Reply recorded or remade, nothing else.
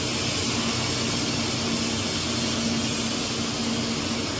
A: recorded